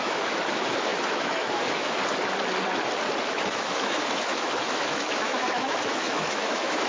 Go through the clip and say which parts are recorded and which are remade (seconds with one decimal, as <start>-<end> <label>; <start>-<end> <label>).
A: 0.0-2.0 remade; 2.0-3.3 recorded; 3.3-6.9 remade